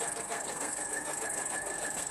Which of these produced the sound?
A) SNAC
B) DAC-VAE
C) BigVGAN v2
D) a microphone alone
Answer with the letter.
A